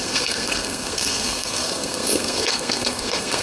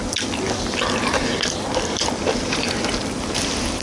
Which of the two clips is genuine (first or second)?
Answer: second